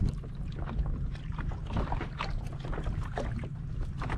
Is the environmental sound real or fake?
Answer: real